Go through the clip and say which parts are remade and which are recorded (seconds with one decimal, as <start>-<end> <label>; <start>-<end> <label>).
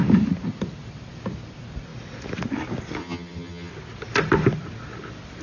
0.0-3.0 recorded; 3.0-3.7 remade; 3.7-5.4 recorded